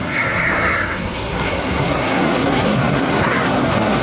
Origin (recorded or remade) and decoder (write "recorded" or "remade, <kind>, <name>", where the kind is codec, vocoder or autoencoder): remade, codec, SNAC